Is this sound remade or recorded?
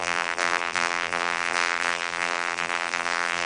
remade